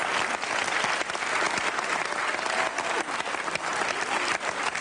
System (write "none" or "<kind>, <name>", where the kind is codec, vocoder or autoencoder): none